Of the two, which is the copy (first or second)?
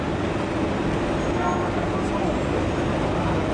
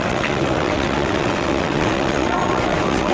second